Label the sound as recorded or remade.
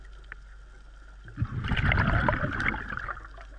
recorded